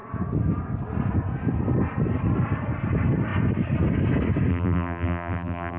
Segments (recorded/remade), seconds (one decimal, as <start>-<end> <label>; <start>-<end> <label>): 0.0-4.5 recorded; 4.5-5.8 remade